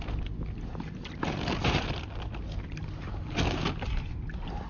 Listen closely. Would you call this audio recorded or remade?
recorded